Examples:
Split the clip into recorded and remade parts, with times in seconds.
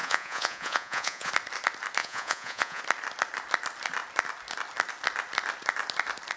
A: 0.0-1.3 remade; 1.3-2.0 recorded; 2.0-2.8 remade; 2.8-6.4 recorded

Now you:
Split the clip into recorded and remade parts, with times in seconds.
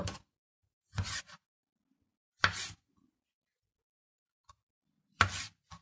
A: 0.0-0.5 recorded; 0.5-1.2 remade; 1.2-5.8 recorded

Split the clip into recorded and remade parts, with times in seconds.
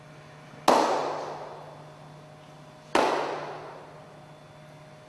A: 0.0-5.1 recorded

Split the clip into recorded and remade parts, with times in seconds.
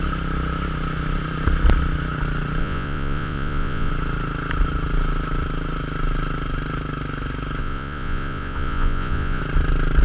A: 0.0-2.6 recorded; 2.6-3.9 remade; 3.9-7.6 recorded; 7.6-9.4 remade; 9.4-10.0 recorded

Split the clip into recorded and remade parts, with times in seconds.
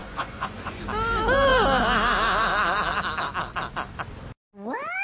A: 0.0-0.8 remade; 0.8-5.0 recorded